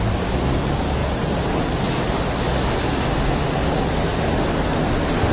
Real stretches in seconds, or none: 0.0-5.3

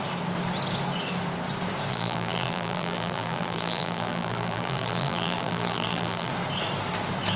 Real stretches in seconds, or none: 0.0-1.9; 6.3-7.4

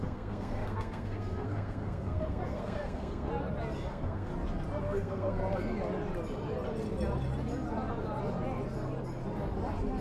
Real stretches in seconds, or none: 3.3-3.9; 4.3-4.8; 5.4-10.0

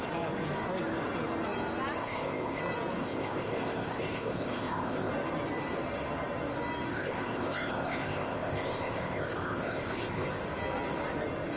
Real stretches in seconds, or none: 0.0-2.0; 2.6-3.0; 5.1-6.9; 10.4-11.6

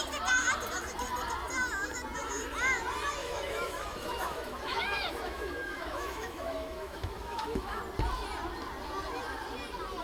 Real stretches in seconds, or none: 0.0-3.2; 7.8-10.0

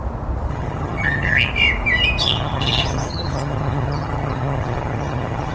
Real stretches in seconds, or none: 0.0-0.5; 1.5-2.2

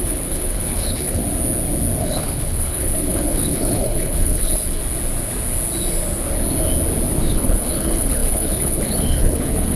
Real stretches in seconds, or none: 1.2-2.0; 4.8-7.3

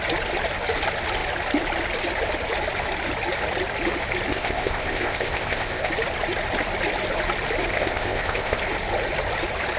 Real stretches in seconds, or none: 0.0-4.3; 5.9-7.7; 8.6-9.8